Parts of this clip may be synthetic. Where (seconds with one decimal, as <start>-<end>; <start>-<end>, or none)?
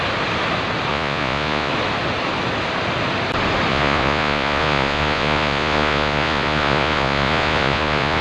0.9-1.7; 3.7-8.2